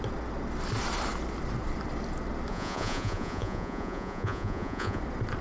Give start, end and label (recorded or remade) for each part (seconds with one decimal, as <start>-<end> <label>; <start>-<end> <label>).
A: 0.0-2.5 recorded; 2.5-5.0 remade; 5.0-5.4 recorded